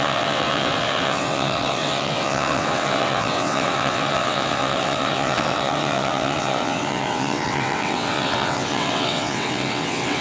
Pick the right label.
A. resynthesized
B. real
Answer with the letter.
A